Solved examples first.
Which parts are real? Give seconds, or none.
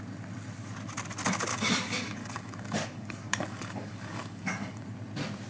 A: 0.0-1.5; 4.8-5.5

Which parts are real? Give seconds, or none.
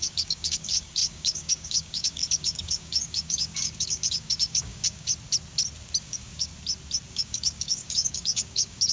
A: 5.1-6.0; 6.5-7.1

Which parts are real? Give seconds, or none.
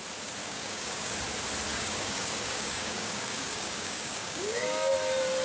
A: 0.0-0.4; 1.1-1.7; 4.9-5.4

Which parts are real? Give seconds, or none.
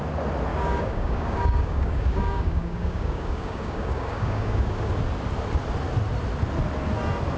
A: 0.0-0.5; 4.9-7.4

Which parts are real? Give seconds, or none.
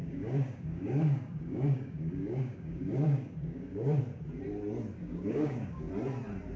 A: 4.0-5.0; 5.9-6.6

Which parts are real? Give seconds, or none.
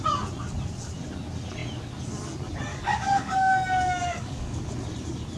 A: 0.0-2.7; 4.6-5.4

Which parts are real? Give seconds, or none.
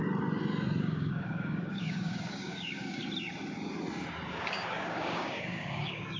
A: 0.0-0.8; 3.0-4.3